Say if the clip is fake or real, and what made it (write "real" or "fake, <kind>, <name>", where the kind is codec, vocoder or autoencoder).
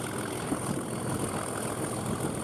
real